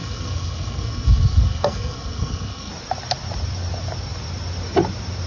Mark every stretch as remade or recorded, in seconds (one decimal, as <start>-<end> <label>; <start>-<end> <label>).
0.0-2.7 remade; 2.7-5.3 recorded